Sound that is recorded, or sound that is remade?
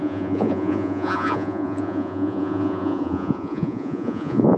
remade